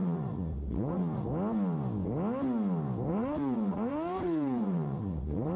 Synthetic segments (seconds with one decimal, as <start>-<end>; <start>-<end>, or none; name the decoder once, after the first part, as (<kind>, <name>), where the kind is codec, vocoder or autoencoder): 0.0-1.3 (vocoder, Vocos); 3.1-5.6